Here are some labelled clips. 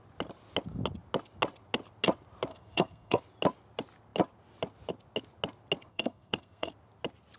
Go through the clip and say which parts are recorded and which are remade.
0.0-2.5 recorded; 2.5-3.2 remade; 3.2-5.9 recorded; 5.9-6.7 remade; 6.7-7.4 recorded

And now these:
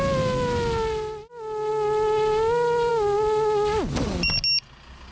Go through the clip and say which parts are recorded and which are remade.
0.0-5.1 recorded

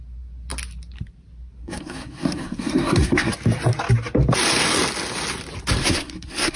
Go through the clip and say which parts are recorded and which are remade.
0.0-1.6 recorded; 1.6-3.3 remade; 3.3-5.8 recorded; 5.8-6.6 remade

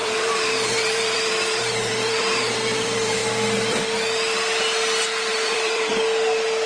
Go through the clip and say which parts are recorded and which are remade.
0.0-3.2 remade; 3.2-5.3 recorded; 5.3-5.9 remade; 5.9-6.7 recorded

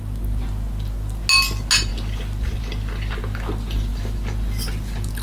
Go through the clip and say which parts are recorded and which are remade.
0.0-5.2 recorded

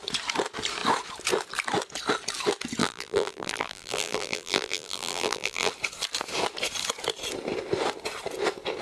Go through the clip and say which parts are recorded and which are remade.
0.0-2.8 recorded; 2.8-5.7 remade; 5.7-8.8 recorded